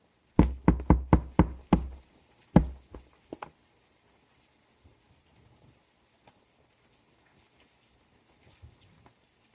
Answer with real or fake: real